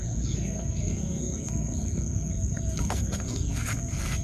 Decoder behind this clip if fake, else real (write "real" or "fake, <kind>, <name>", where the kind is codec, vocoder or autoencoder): fake, codec, SNAC